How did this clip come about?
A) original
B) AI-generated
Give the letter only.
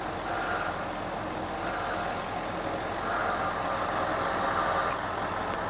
A